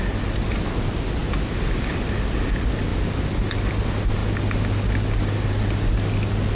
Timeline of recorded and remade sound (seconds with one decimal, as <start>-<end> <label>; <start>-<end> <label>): 0.0-6.5 recorded